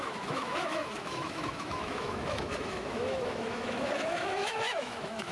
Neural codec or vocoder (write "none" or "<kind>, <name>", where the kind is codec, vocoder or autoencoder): autoencoder, DAC-VAE